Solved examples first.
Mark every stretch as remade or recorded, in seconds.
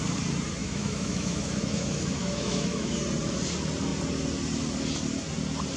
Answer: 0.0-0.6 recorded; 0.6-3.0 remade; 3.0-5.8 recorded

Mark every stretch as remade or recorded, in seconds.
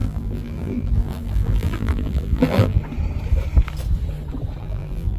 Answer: 0.0-2.8 remade; 2.8-4.6 recorded; 4.6-5.2 remade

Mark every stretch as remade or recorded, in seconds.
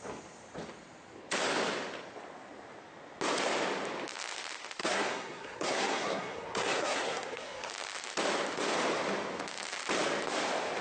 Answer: 0.0-4.8 recorded; 4.8-7.7 remade; 7.7-10.8 recorded